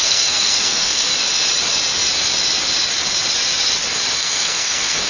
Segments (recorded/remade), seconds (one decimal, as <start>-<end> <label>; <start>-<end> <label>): 0.0-1.1 remade; 1.1-4.2 recorded; 4.2-5.1 remade